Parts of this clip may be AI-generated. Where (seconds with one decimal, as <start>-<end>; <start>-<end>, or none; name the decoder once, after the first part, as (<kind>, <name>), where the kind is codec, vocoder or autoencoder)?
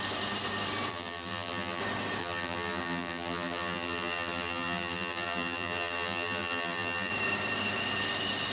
0.9-1.8 (vocoder, BigVGAN v2); 2.2-7.1